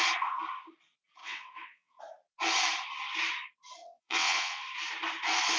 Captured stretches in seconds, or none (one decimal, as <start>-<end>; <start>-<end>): 0.0-1.2; 2.0-3.8; 4.6-5.6